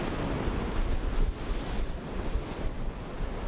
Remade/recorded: recorded